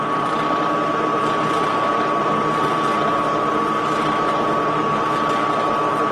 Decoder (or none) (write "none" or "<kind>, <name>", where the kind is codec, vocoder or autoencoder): vocoder, BigVGAN v2